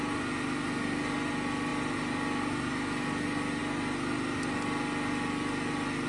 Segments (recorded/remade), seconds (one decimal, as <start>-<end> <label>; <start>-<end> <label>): 0.0-6.1 recorded